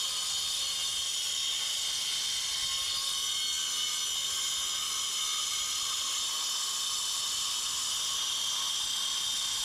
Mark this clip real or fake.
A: real